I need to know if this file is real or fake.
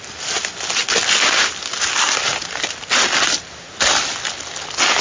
real